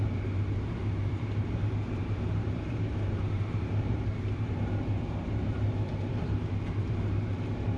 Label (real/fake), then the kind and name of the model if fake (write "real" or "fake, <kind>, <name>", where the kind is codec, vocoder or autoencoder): fake, vocoder, BigVGAN v2